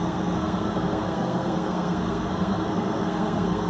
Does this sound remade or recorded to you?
remade